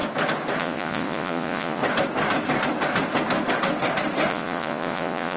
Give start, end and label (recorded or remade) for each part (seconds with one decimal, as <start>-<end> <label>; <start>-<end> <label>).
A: 0.0-0.6 recorded; 0.6-1.8 remade; 1.8-4.3 recorded; 4.3-5.4 remade